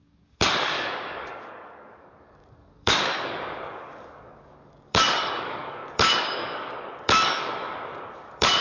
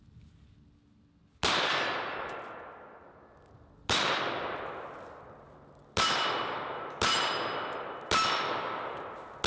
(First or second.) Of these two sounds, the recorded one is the second